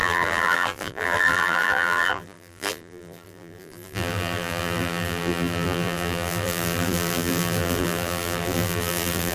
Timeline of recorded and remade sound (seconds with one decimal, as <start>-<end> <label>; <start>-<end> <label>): 0.0-9.3 remade